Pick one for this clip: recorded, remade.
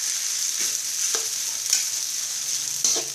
recorded